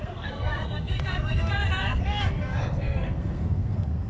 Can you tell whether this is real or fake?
fake